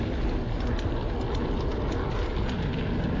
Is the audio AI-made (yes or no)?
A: no